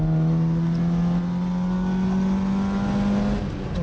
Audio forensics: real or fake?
real